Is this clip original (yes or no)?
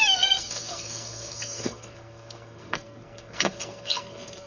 no